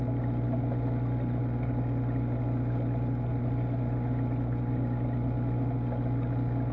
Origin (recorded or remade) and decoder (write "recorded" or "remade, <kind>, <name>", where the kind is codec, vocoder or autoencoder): recorded